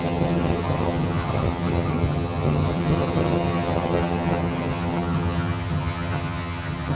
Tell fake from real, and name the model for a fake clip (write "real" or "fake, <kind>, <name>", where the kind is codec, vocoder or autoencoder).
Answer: fake, vocoder, HiFi-GAN